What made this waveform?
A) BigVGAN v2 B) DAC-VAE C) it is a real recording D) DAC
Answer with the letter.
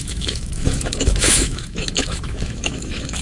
B